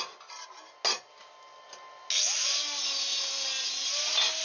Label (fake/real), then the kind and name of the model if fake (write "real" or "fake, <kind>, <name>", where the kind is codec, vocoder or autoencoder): real